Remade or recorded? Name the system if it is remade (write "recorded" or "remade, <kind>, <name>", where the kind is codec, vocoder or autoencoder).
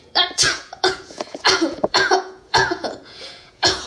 remade, vocoder, Vocos